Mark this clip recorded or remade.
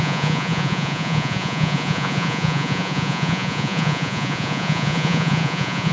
remade